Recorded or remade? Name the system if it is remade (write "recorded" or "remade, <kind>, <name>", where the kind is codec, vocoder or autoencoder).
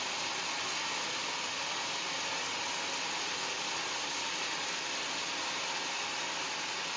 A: recorded